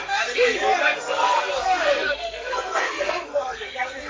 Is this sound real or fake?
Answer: fake